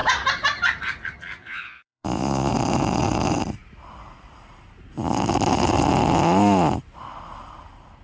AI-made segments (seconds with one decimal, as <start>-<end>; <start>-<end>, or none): 1.4-2.5